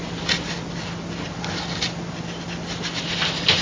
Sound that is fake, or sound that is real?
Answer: real